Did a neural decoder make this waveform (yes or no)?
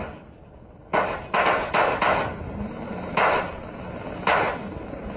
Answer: no